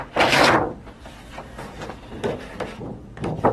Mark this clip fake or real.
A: real